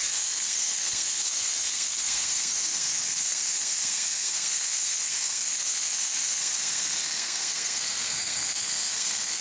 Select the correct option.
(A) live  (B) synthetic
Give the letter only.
B